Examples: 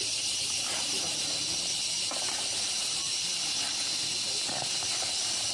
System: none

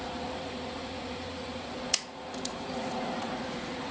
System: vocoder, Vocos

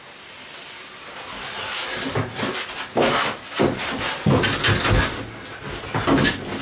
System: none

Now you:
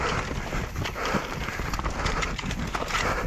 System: none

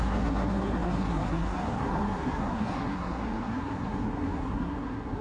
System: codec, SNAC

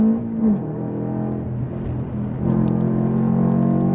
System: none